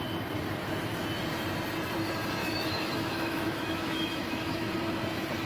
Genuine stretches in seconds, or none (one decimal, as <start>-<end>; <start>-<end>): 0.0-2.4; 4.7-5.5

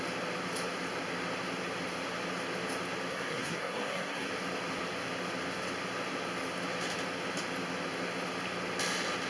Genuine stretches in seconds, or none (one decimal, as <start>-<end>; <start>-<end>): 0.0-3.1; 4.3-9.3